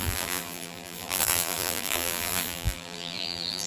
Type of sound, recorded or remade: remade